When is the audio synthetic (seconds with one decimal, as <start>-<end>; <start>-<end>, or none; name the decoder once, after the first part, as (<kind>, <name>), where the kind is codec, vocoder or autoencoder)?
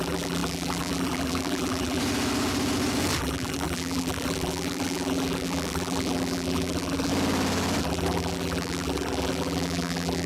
0.0-2.0 (vocoder, BigVGAN v2); 3.2-7.1; 7.8-10.3